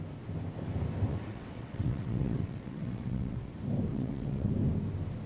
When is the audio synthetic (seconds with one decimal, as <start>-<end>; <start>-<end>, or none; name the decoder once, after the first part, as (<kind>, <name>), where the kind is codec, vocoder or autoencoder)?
1.1-3.5 (vocoder, WaveNeXt); 3.9-4.5